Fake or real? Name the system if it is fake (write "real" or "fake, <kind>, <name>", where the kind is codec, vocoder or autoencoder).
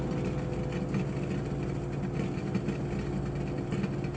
real